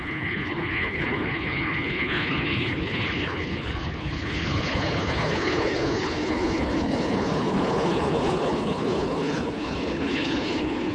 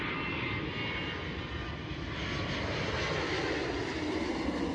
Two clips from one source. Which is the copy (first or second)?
first